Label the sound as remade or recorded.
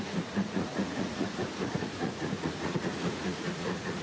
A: remade